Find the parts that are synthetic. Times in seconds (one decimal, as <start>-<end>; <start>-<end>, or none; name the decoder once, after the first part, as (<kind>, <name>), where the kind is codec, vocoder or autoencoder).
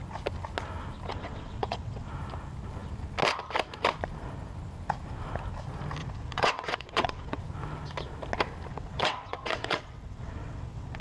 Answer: 1.1-2.1 (vocoder, WaveNeXt); 6.0-7.4; 8.7-11.0